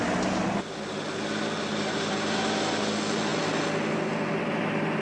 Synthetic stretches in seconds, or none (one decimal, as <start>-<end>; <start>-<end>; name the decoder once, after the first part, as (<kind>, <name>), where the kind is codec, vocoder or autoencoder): 1.7-2.8 (vocoder, BigVGAN v2)